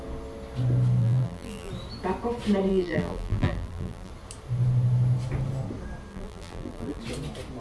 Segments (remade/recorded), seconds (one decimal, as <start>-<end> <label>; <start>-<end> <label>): 0.0-1.0 recorded; 1.0-1.7 remade; 1.7-2.7 recorded; 2.7-4.1 remade; 4.1-6.1 recorded; 6.1-7.0 remade; 7.0-7.6 recorded

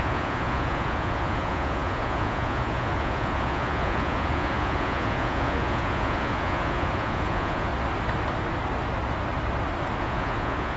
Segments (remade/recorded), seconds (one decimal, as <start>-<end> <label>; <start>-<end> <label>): 0.0-7.7 remade; 7.7-10.0 recorded; 10.0-10.8 remade